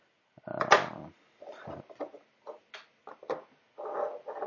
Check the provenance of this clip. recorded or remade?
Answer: recorded